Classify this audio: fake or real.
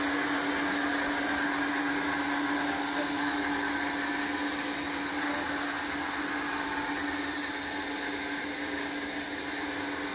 real